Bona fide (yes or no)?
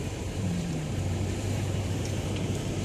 no